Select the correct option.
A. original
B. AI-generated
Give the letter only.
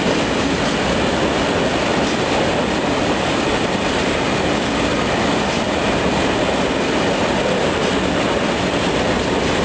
A